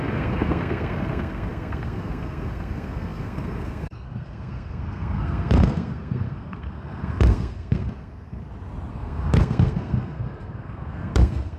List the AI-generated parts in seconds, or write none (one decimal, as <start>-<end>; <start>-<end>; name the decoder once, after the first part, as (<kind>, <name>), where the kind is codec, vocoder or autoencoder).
0.0-8.4 (codec, SNAC); 8.9-11.6